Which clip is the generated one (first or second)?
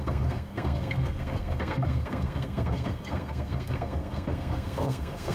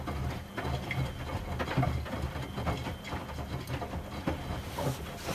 first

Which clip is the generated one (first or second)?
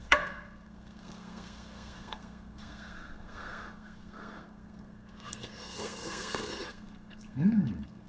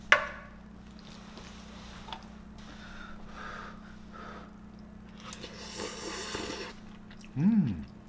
first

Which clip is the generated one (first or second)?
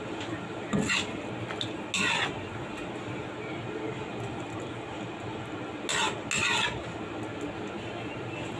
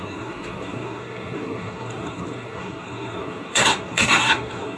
second